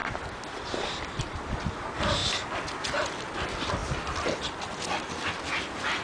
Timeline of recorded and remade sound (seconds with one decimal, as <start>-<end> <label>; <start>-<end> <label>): 0.0-6.0 recorded